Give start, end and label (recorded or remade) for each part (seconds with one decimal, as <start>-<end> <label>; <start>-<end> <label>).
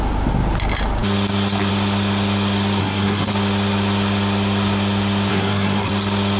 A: 0.0-2.8 recorded; 2.8-3.3 remade; 3.3-5.3 recorded; 5.3-5.9 remade; 5.9-6.4 recorded